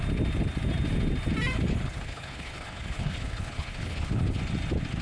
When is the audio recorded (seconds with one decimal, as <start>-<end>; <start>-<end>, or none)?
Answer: 0.0-1.7; 4.4-5.0